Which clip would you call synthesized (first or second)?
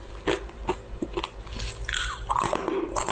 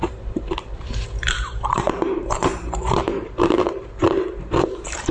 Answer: second